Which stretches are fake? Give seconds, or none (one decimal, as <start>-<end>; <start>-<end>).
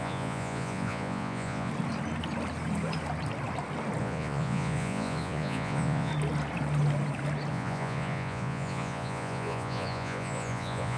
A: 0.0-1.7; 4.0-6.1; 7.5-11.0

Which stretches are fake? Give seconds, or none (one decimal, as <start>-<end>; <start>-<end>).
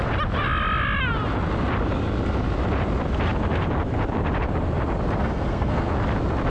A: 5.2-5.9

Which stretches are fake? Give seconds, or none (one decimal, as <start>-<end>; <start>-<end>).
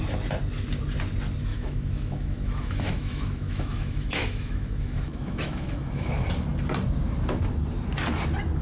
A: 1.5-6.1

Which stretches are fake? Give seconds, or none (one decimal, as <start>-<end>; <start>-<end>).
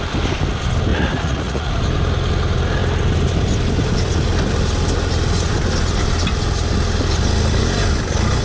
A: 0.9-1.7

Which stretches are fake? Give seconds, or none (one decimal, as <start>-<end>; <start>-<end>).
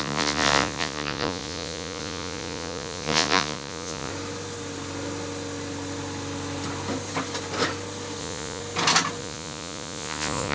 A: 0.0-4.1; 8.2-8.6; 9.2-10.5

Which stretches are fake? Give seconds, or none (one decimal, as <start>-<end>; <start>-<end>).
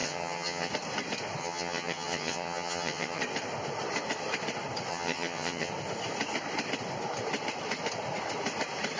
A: 0.0-0.7; 1.4-3.2; 4.9-5.7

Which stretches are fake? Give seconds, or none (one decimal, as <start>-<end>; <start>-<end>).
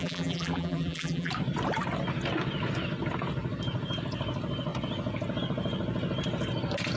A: 0.0-1.3